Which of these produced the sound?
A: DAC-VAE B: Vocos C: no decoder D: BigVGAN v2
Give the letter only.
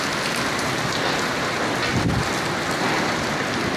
C